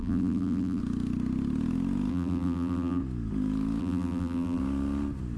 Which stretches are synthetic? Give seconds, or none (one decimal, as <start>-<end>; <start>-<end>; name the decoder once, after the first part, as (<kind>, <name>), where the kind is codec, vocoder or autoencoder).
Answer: 0.0-0.8 (vocoder, BigVGAN v2); 2.1-3.0; 3.8-4.6